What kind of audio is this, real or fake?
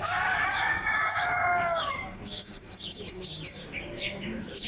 fake